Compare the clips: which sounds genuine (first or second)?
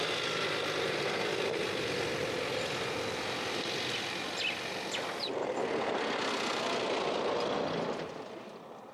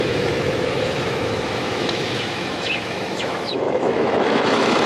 first